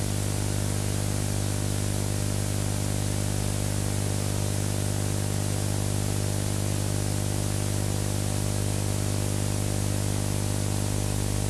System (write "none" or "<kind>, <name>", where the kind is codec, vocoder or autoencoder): none